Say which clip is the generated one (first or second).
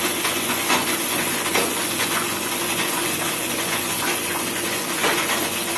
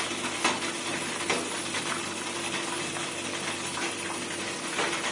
first